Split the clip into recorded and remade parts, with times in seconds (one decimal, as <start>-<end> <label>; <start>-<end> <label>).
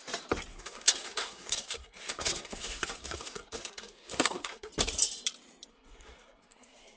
0.0-0.5 recorded; 0.5-4.7 remade; 4.7-5.7 recorded; 5.7-7.0 remade